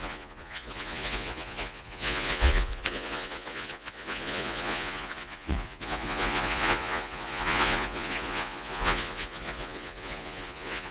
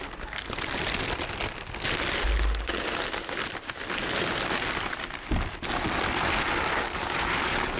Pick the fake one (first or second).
first